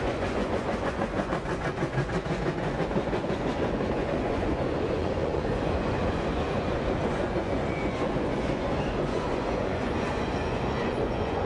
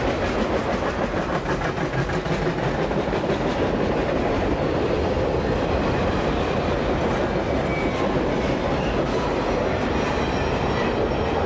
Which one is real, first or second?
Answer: second